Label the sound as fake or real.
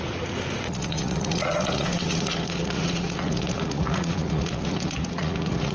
fake